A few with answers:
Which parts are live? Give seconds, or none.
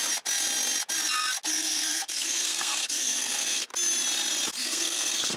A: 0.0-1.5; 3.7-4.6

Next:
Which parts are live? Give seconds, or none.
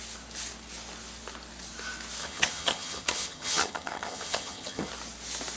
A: 0.0-2.2; 4.9-5.6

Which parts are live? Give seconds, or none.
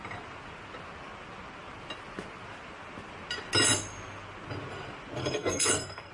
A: 0.0-5.2